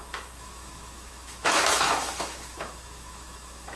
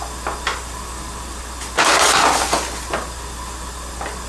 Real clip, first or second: second